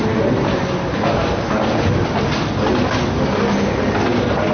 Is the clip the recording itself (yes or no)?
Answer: yes